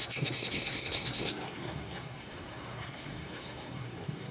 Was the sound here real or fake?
fake